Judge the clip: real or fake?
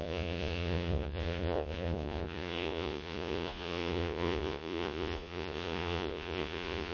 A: fake